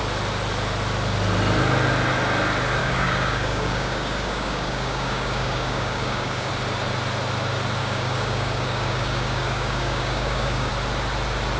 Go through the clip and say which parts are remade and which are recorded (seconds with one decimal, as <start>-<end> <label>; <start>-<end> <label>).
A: 0.0-2.8 recorded; 2.8-6.5 remade; 6.5-7.8 recorded; 7.8-10.7 remade; 10.7-11.6 recorded